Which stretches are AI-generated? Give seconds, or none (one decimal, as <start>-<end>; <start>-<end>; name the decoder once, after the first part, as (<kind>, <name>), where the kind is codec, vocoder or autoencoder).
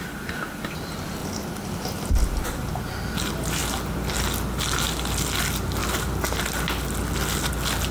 none